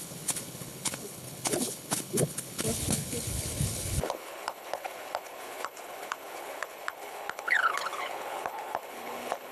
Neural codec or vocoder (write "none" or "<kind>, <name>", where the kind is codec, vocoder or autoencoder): codec, HILCodec